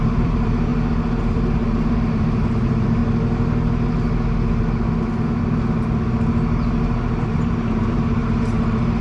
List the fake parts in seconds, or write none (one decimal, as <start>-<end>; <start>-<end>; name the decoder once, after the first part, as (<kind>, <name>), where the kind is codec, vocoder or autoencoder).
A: 0.0-0.7 (vocoder, BigVGAN v2); 1.2-3.0; 7.2-9.0